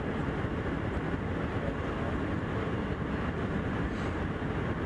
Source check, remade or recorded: recorded